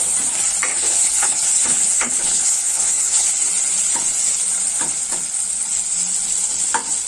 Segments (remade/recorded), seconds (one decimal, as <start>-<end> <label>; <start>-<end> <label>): 0.0-0.7 recorded; 0.7-3.3 remade; 3.3-7.1 recorded